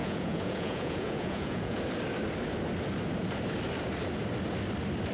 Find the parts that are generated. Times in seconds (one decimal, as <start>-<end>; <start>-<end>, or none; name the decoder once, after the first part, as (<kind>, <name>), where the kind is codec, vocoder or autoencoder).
0.0-1.8 (vocoder, Vocos)